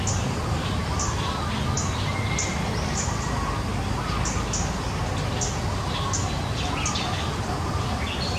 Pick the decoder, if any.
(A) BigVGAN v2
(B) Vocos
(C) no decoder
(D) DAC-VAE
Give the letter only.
C